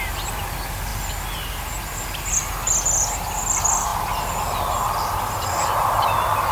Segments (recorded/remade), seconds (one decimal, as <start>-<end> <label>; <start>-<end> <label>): 0.0-0.9 remade; 0.9-2.0 recorded; 2.0-3.9 remade; 3.9-6.5 recorded